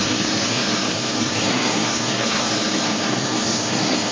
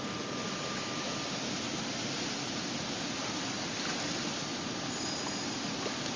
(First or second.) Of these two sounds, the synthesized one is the first